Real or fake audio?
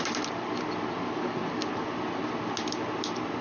real